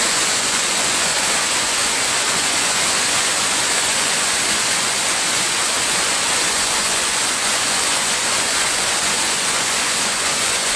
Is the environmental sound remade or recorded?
remade